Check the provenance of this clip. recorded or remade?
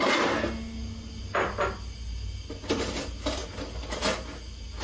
recorded